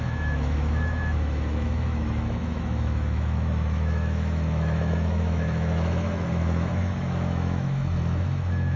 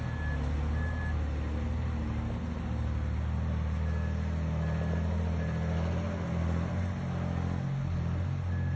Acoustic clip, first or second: second